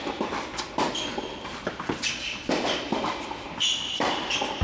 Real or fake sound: real